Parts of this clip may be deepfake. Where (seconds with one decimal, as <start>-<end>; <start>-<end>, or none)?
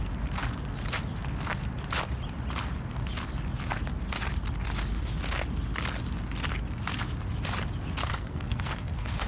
8.0-9.3